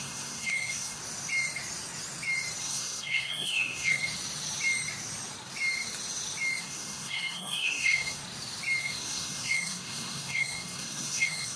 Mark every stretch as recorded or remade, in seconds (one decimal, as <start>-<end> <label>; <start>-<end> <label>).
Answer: 0.0-1.0 remade; 1.0-2.6 recorded; 2.6-4.0 remade; 4.0-6.6 recorded; 6.6-8.2 remade; 8.2-8.8 recorded; 8.8-11.6 remade